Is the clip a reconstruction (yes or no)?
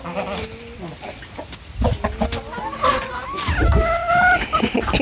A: no